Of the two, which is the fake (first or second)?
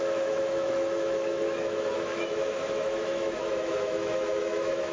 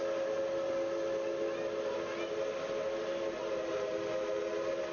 first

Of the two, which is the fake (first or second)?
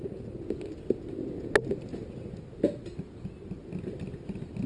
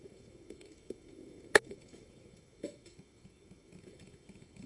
second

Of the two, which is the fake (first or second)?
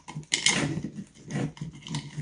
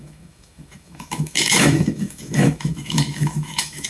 second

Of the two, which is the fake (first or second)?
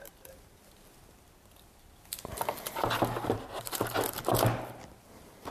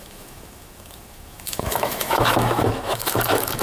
second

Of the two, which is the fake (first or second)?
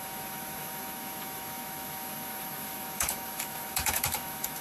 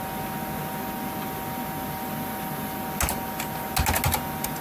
first